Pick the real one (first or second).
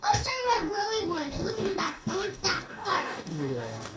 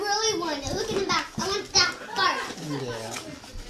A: second